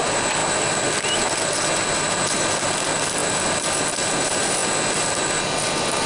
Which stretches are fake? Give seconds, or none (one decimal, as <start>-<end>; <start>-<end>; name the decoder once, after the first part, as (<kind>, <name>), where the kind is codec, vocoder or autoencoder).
none